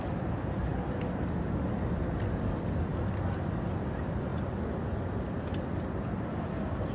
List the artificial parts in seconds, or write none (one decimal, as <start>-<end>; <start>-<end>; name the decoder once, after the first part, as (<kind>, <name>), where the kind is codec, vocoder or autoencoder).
none